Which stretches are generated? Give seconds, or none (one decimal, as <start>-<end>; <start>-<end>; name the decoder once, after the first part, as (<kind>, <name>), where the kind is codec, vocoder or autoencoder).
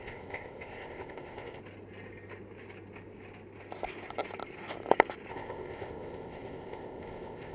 0.0-1.6 (codec, ZipCodec); 5.3-7.5